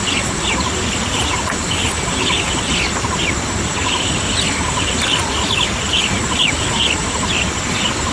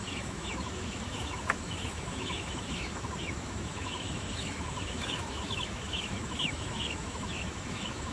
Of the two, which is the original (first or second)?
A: first